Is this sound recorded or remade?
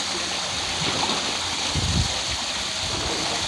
recorded